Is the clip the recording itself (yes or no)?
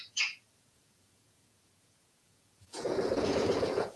no